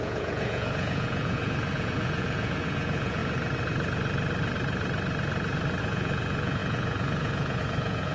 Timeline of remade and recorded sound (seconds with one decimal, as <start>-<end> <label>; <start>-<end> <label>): 0.0-3.2 remade; 3.2-5.8 recorded; 5.8-8.1 remade